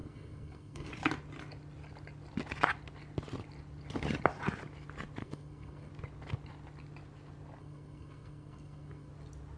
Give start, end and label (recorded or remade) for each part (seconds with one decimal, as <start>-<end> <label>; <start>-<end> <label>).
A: 0.0-0.9 remade; 0.9-5.2 recorded; 5.2-5.9 remade; 5.9-7.6 recorded; 7.6-9.1 remade; 9.1-9.6 recorded